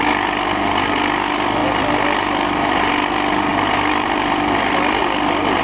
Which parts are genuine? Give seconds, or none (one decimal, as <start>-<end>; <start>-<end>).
0.0-3.5; 5.0-5.6

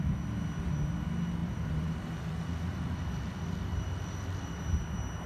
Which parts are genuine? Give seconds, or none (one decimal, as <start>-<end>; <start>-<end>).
0.0-1.4; 4.6-5.3

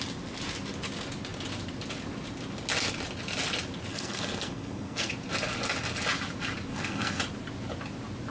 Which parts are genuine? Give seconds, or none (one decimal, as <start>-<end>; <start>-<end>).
0.0-3.9; 5.1-6.7; 7.2-8.3

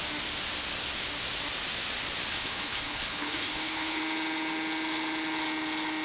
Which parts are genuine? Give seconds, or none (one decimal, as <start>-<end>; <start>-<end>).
0.0-2.3; 4.0-6.0

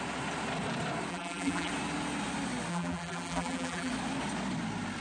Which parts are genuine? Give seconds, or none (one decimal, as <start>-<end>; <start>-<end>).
0.0-1.1; 1.7-2.7; 3.9-5.0

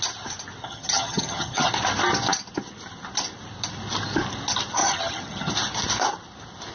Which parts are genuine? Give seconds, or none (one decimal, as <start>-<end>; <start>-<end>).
0.0-0.6; 1.7-4.8; 5.5-6.7

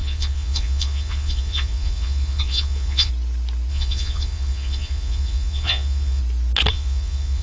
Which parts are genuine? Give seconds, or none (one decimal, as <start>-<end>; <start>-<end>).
3.1-3.7; 6.2-6.7

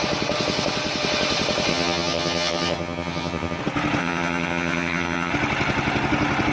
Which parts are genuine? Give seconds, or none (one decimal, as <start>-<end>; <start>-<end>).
0.0-1.7; 3.6-4.0; 5.3-6.5